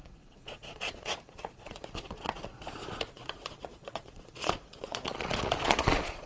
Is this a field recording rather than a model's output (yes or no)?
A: no